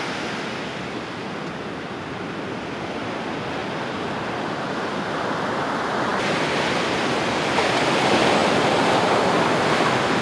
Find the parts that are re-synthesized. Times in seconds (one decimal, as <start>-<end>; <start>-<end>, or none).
3.6-4.3; 6.1-7.0